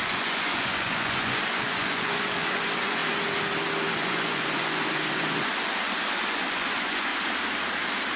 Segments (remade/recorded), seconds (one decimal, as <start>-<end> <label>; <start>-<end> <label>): 0.0-3.0 remade; 3.0-3.9 recorded; 3.9-7.1 remade; 7.1-8.2 recorded